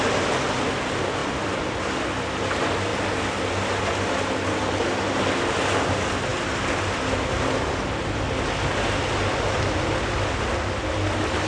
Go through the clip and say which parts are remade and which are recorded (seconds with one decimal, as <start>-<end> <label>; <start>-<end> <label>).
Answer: 0.0-1.2 recorded; 1.2-2.4 remade; 2.4-2.9 recorded; 2.9-3.8 remade; 3.8-11.5 recorded